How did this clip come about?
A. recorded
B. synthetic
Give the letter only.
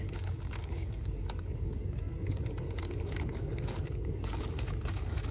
B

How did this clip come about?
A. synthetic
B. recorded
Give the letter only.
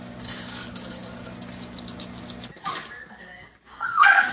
A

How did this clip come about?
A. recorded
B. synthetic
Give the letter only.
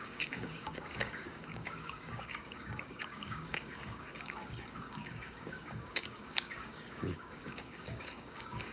B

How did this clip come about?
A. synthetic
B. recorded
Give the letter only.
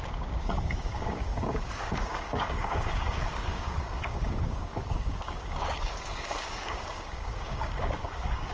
A